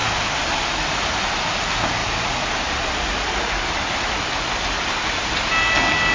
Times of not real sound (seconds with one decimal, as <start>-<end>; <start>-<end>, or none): none